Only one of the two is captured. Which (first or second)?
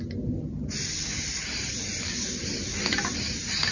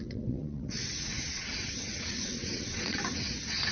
first